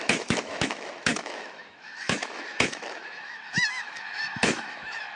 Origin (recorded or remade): remade